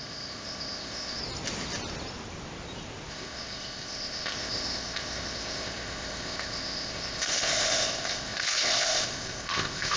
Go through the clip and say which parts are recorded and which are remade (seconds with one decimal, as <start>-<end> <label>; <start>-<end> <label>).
0.0-1.2 remade; 1.2-3.1 recorded; 3.1-10.0 remade